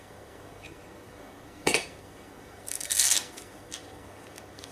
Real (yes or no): no